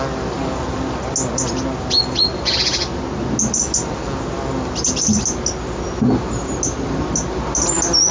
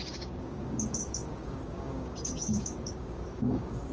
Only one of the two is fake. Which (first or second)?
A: second